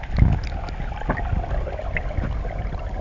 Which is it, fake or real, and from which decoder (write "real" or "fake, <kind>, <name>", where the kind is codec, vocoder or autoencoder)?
real